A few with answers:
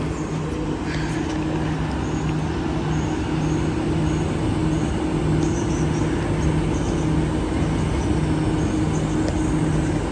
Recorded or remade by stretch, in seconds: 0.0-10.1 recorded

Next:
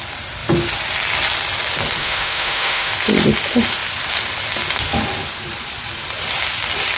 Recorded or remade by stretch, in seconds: 0.0-2.0 recorded; 2.0-2.9 remade; 2.9-7.0 recorded

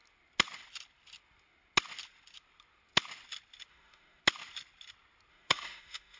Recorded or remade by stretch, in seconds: 0.0-3.7 recorded; 3.7-4.2 remade; 4.2-5.3 recorded; 5.3-6.2 remade

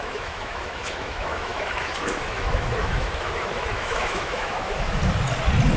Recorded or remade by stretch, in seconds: 0.0-5.0 remade; 5.0-5.8 recorded